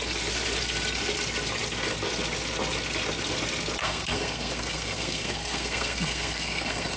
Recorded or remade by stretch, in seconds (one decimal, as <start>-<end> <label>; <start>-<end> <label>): 0.0-3.8 recorded; 3.8-7.0 remade